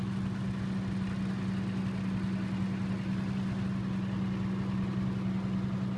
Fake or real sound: real